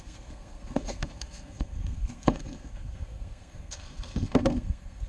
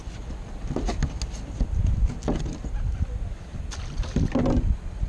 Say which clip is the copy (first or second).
first